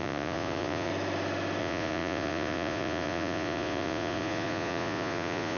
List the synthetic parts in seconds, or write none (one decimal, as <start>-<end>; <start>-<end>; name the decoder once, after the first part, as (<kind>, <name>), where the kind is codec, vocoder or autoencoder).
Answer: 0.0-0.9 (vocoder, Vocos); 1.6-5.6